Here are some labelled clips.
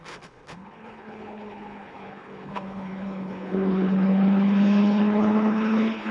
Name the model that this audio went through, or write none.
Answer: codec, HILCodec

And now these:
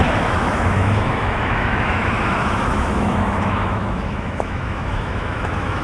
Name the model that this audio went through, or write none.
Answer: autoencoder, DAC-VAE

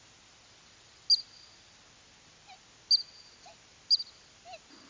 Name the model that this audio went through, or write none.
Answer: none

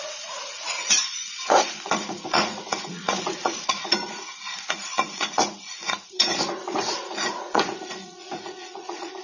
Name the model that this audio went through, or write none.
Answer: vocoder, Vocos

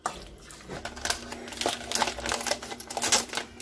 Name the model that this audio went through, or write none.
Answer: none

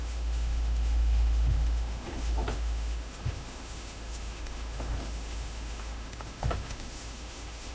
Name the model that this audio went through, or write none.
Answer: autoencoder, DAC-VAE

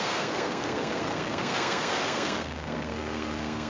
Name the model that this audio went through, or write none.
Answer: codec, SNAC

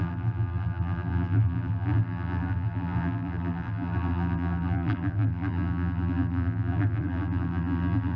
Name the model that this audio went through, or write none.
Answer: vocoder, BigVGAN v2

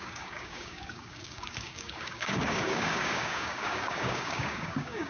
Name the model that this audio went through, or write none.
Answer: codec, DAC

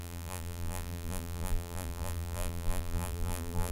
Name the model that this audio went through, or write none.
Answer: vocoder, BigVGAN v2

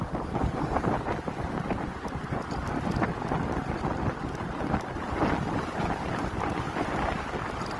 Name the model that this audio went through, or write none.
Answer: none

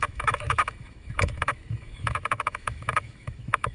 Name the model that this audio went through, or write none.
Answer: autoencoder, DAC-VAE